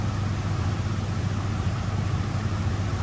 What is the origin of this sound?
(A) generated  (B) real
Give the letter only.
B